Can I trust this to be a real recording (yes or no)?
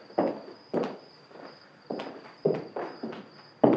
yes